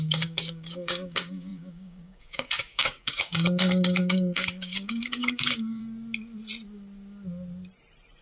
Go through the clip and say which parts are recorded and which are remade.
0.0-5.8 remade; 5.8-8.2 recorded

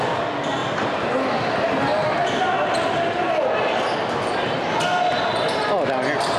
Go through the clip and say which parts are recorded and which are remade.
0.0-6.4 recorded

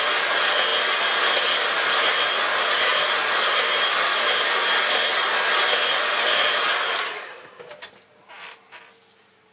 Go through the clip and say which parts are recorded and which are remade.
0.0-9.5 recorded